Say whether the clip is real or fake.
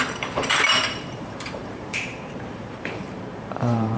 fake